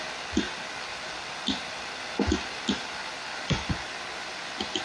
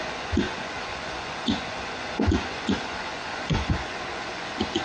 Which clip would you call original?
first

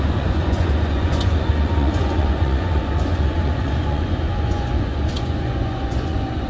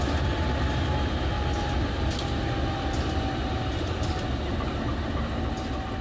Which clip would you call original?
second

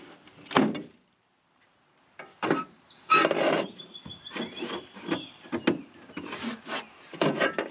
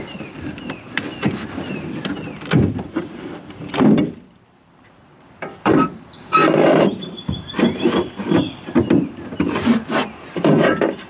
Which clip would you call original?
first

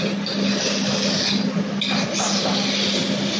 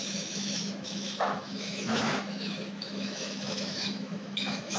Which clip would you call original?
first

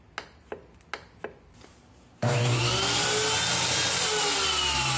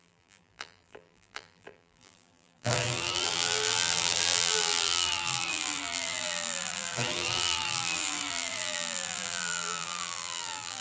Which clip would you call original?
first